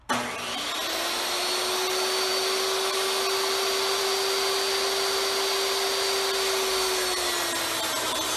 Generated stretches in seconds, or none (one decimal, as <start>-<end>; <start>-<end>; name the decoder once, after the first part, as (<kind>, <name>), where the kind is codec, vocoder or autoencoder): none